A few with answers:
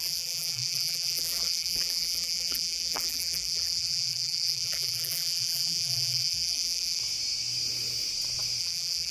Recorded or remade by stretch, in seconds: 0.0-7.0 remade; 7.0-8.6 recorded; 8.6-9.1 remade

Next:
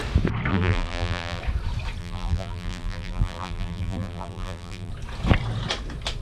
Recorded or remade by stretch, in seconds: 0.0-0.5 recorded; 0.5-1.4 remade; 1.4-2.0 recorded; 2.0-4.9 remade; 4.9-6.2 recorded